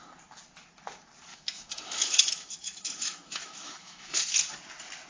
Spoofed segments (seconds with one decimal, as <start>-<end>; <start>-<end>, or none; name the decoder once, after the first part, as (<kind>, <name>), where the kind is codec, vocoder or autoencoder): 1.3-4.4 (autoencoder, DAC-VAE)